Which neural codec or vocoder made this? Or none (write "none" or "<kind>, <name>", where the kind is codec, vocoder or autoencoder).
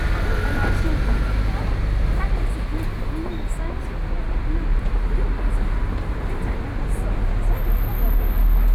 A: none